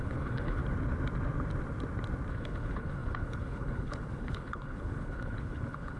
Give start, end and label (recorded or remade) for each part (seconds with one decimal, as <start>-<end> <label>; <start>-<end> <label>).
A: 0.0-0.6 remade; 0.6-2.3 recorded; 2.3-6.0 remade